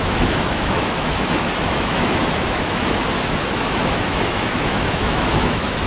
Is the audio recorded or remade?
remade